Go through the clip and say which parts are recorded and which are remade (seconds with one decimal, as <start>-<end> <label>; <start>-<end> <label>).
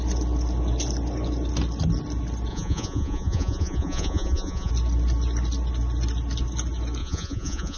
0.0-2.5 recorded; 2.5-4.7 remade; 4.7-7.0 recorded; 7.0-7.8 remade